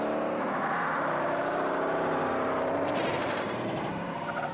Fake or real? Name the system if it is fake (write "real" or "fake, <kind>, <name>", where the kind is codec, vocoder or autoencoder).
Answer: fake, vocoder, BigVGAN v2